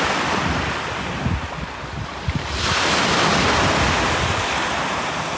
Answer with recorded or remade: recorded